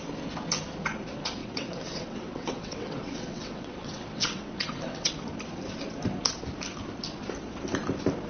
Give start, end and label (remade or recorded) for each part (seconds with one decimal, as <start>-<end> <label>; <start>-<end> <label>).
0.0-1.4 recorded; 1.4-5.1 remade; 5.1-8.3 recorded

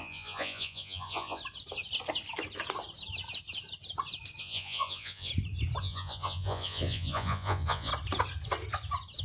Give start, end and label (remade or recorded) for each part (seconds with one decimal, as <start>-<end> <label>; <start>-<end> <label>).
0.0-1.4 remade; 1.4-4.4 recorded; 4.4-5.3 remade; 5.3-5.8 recorded; 5.8-7.9 remade; 7.9-9.2 recorded